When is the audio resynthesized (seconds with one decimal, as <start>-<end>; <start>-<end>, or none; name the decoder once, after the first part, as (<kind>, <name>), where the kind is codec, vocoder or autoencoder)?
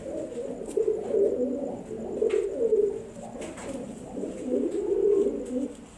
3.6-4.7 (vocoder, BigVGAN v2)